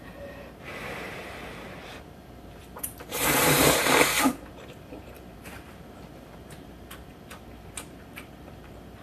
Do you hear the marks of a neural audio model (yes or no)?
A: yes